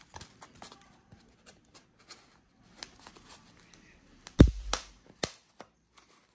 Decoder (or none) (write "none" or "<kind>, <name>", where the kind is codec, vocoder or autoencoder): none